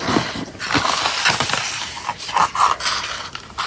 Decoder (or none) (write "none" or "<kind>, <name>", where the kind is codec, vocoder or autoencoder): none